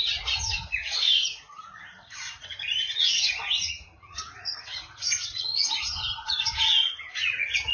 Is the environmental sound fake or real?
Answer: fake